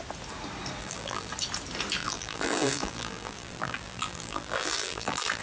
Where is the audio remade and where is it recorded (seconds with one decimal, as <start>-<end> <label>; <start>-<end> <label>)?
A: 0.0-0.8 recorded; 0.8-1.3 remade; 1.3-2.0 recorded; 2.0-5.4 remade